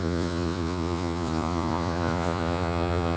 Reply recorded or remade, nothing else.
remade